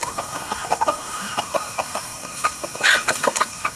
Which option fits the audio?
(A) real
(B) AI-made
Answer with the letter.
B